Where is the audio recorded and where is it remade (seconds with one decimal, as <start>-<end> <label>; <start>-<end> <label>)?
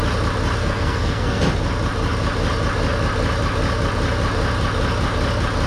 0.0-0.6 recorded; 0.6-1.4 remade; 1.4-5.7 recorded